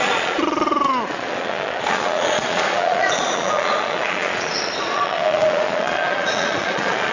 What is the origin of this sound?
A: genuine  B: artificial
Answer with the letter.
B